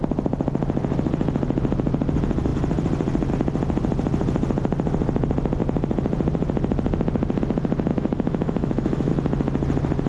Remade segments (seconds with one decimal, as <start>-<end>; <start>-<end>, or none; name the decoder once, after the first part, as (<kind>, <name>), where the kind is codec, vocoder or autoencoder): 7.9-9.1 (autoencoder, DAC-VAE)